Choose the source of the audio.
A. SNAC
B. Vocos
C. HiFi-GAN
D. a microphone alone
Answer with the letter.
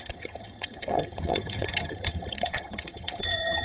C